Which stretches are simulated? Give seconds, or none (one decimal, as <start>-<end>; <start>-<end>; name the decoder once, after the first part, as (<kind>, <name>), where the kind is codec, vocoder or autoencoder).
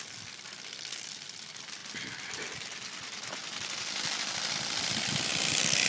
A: none